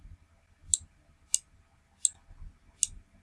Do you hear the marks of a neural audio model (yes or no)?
no